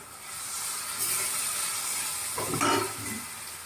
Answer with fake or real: real